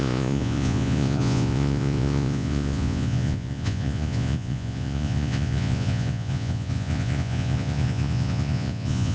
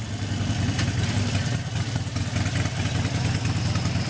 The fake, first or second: first